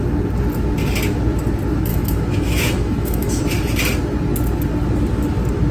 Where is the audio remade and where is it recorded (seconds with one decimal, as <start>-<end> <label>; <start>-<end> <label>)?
0.0-1.9 recorded; 1.9-3.4 remade; 3.4-5.7 recorded